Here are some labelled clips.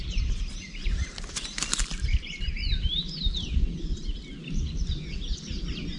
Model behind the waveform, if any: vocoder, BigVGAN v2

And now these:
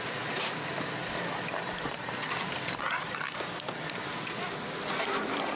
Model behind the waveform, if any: none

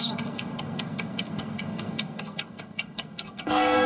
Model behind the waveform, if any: codec, SNAC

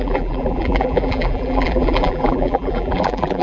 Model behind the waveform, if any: vocoder, BigVGAN v2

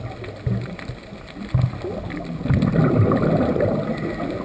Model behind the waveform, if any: none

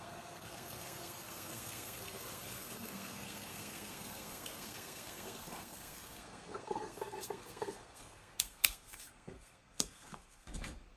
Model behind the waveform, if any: codec, SNAC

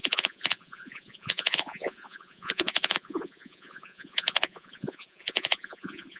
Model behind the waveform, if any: vocoder, Vocos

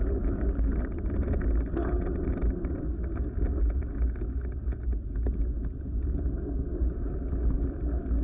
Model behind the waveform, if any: none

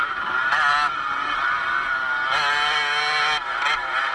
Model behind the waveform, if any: none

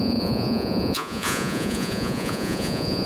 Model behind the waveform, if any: vocoder, Vocos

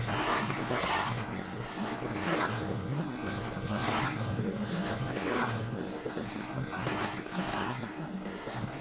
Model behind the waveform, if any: codec, SNAC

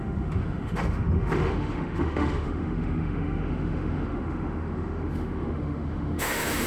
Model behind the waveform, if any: autoencoder, DAC-VAE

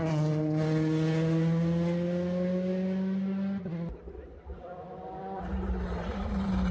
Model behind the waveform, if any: none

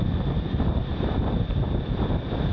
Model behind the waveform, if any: vocoder, BigVGAN v2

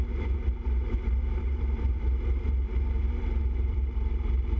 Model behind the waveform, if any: vocoder, BigVGAN v2